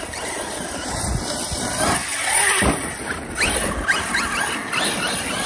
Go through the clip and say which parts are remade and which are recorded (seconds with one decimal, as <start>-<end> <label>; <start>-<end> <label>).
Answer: 0.0-5.5 recorded